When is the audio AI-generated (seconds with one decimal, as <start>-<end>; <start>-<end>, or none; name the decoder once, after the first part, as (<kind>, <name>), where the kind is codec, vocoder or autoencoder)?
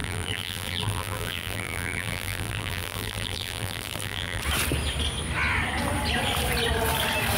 0.0-4.4 (vocoder, BigVGAN v2)